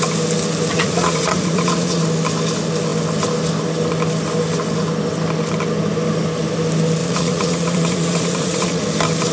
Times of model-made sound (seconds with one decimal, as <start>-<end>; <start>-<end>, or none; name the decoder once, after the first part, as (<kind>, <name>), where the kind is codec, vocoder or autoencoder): 0.7-2.0 (vocoder, Vocos); 7.0-8.8